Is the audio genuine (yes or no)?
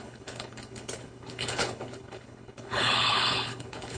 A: no